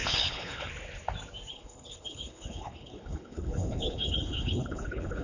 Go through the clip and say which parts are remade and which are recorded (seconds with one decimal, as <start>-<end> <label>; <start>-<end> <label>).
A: 0.0-0.7 remade; 0.7-1.5 recorded; 1.5-5.2 remade